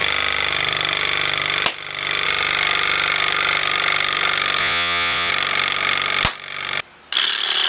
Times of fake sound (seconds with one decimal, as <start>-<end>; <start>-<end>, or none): 4.6-5.3